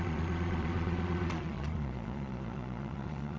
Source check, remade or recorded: remade